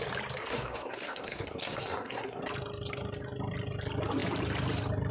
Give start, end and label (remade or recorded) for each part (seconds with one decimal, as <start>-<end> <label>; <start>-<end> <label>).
0.0-0.4 recorded; 0.4-2.4 remade; 2.4-5.1 recorded